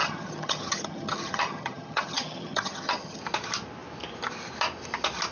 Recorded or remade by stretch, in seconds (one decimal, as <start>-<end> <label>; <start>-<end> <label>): 0.0-3.2 remade; 3.2-5.3 recorded